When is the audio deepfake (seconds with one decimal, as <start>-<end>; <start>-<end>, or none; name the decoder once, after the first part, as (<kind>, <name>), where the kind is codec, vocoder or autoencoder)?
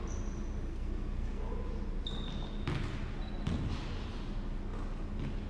0.7-1.5 (codec, SNAC)